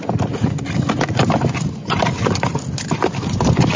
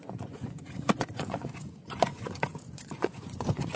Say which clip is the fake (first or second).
second